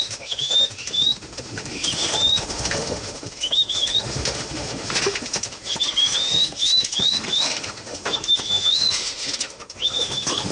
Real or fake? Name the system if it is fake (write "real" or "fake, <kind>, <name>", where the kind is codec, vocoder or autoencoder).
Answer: fake, autoencoder, DAC-VAE